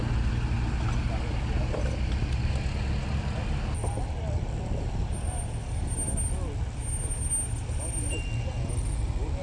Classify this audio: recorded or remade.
recorded